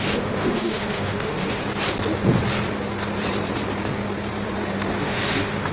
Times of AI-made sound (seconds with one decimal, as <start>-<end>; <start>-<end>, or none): 0.0-1.6; 5.0-5.7